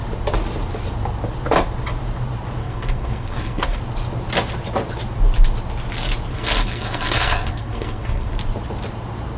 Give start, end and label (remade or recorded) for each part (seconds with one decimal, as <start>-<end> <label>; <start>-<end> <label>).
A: 0.0-2.6 recorded; 2.6-3.8 remade; 3.8-6.3 recorded; 6.3-8.3 remade; 8.3-9.4 recorded

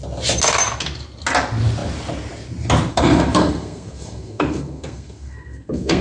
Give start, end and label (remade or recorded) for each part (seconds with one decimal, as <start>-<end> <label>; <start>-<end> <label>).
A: 0.0-2.9 recorded; 2.9-6.0 remade

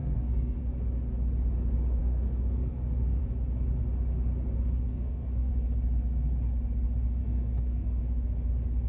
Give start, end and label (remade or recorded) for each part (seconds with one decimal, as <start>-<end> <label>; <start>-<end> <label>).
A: 0.0-0.6 remade; 0.6-2.0 recorded; 2.0-3.2 remade; 3.2-4.9 recorded; 4.9-5.5 remade; 5.5-7.2 recorded; 7.2-8.0 remade; 8.0-8.9 recorded

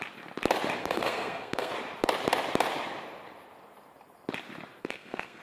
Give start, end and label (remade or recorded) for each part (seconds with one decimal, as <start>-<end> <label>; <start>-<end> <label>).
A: 0.0-0.8 recorded; 0.8-1.7 remade; 1.7-4.8 recorded; 4.8-5.4 remade

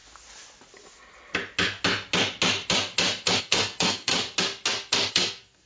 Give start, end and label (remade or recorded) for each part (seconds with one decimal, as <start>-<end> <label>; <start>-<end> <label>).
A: 0.0-3.4 recorded; 3.4-4.1 remade; 4.1-5.1 recorded; 5.1-5.7 remade

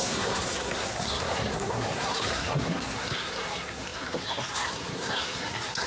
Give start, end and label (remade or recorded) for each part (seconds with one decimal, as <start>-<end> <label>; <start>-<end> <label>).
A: 0.0-5.9 remade

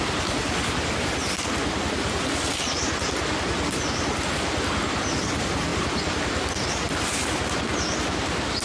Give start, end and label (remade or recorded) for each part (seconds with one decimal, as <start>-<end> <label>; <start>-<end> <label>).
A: 0.0-8.6 recorded